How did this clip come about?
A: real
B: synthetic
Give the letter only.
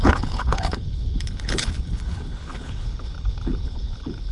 B